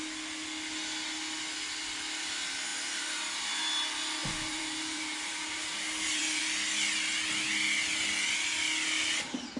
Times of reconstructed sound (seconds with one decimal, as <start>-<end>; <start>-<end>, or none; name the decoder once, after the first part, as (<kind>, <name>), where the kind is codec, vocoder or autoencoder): 4.2-6.4 (vocoder, BigVGAN v2)